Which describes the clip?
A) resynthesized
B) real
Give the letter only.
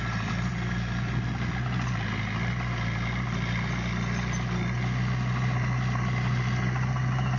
B